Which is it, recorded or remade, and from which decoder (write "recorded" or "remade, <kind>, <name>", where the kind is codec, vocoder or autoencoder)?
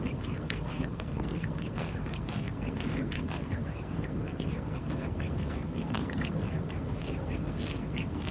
remade, codec, SNAC